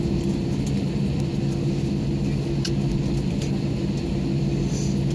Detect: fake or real real